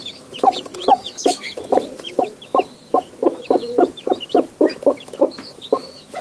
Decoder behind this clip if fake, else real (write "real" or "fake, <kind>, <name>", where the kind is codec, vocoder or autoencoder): fake, autoencoder, DAC-VAE